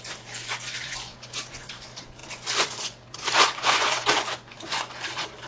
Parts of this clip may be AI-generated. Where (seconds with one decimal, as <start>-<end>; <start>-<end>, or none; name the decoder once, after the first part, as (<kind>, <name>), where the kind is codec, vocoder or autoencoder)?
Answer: 0.0-5.5 (vocoder, Vocos)